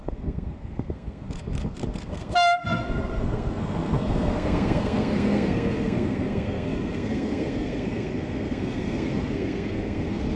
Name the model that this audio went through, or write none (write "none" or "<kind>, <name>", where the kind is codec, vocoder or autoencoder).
codec, SNAC